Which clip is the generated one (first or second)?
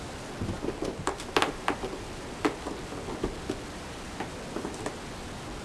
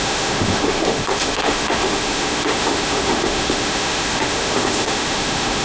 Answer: second